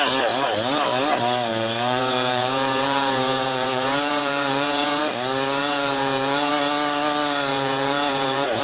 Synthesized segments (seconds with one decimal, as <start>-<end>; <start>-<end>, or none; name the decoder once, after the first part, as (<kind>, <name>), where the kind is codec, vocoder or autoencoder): 1.5-5.0 (vocoder, Vocos); 5.6-6.5; 7.5-8.6